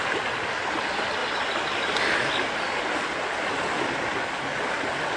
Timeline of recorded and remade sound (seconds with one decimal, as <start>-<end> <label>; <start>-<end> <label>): 0.0-5.2 recorded